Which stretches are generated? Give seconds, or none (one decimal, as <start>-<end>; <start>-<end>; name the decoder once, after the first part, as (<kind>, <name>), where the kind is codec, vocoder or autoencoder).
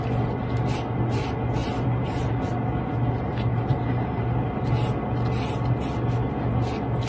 1.6-2.3 (vocoder, BigVGAN v2); 3.5-4.4